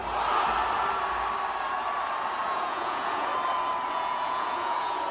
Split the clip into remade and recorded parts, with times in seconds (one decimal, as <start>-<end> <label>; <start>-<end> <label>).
0.0-2.4 recorded; 2.4-3.3 remade; 3.3-3.9 recorded; 3.9-5.1 remade

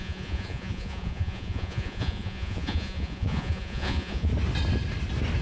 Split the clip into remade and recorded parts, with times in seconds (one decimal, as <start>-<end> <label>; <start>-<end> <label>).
0.0-4.3 remade; 4.3-5.4 recorded

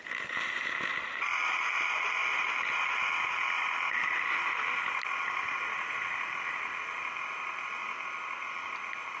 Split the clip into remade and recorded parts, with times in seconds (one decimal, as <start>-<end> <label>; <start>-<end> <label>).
0.0-9.2 recorded

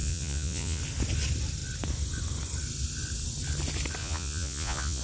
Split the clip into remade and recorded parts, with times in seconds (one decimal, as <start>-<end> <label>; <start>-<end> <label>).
0.0-0.8 remade; 0.8-4.0 recorded; 4.0-5.0 remade

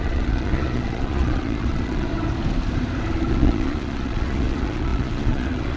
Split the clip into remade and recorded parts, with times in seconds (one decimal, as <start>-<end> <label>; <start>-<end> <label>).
0.0-2.1 remade; 2.1-3.3 recorded; 3.3-5.8 remade